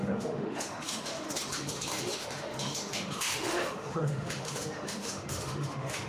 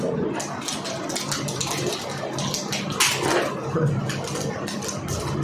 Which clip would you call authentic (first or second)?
second